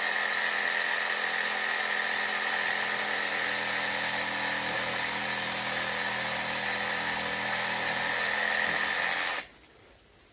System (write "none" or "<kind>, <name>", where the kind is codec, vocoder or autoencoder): none